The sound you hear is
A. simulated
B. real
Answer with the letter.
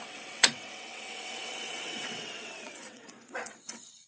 A